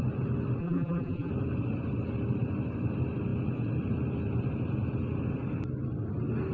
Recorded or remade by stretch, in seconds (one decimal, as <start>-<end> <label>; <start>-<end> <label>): 0.0-0.6 recorded; 0.6-1.3 remade; 1.3-6.5 recorded